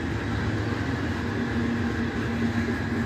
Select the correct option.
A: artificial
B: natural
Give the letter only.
B